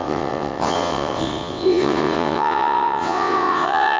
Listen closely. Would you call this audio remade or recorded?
remade